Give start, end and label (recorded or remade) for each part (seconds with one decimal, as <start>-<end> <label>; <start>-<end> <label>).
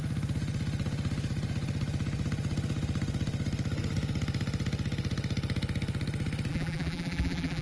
0.0-6.5 recorded; 6.5-7.6 remade